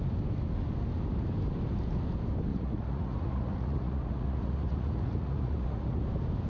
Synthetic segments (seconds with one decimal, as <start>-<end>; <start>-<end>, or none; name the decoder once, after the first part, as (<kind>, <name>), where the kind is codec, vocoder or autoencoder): 2.5-6.0 (vocoder, Vocos)